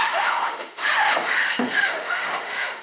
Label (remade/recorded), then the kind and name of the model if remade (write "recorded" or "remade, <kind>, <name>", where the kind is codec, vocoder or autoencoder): remade, autoencoder, DAC-VAE